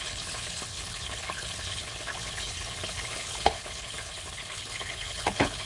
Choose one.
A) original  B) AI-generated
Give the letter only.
B